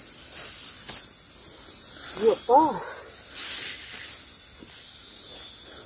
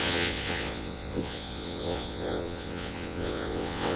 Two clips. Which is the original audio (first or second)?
first